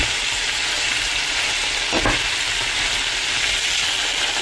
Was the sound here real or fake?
real